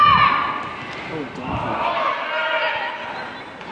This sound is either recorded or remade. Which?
recorded